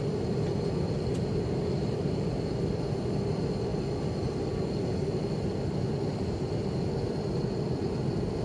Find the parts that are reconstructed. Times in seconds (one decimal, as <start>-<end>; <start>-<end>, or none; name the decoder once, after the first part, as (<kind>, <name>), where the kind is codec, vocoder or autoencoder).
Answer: none